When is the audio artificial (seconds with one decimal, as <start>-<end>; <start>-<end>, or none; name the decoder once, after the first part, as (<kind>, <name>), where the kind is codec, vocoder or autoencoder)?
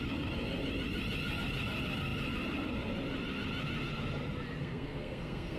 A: 4.6-5.6 (codec, SNAC)